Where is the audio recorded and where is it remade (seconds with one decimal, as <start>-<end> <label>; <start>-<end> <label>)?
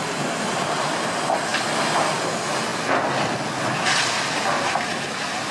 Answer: 0.0-5.5 recorded